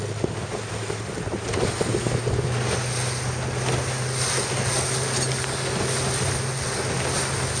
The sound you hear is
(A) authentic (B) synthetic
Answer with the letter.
A